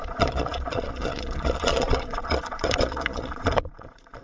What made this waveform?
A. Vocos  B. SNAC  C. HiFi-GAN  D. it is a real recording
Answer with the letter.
A